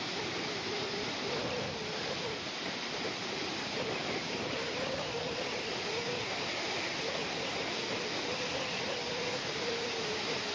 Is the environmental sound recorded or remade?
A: recorded